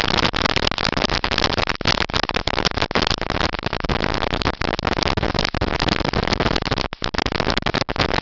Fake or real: real